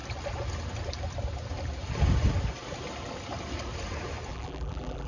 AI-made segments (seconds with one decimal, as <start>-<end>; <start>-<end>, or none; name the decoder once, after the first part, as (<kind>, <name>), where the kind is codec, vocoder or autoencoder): 4.3-5.1 (vocoder, BigVGAN v2)